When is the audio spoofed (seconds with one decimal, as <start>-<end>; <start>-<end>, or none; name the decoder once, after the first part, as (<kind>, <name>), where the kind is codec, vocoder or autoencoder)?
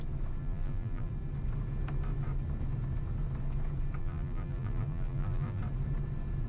0.4-1.1 (vocoder, BigVGAN v2); 4.0-5.6